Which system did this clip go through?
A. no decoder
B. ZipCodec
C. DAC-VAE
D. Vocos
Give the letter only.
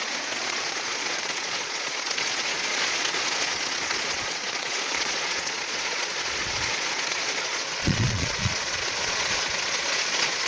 D